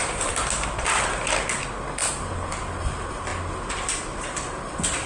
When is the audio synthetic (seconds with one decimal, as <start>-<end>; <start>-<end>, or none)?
none